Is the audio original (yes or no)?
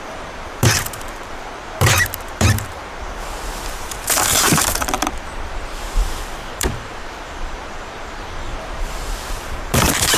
no